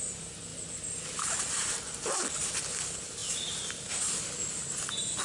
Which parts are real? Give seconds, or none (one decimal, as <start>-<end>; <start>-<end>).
0.0-0.5; 2.5-3.2; 3.7-5.2